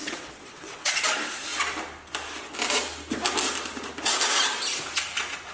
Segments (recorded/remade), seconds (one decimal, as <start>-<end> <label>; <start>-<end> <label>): 0.0-1.0 remade; 1.0-5.5 recorded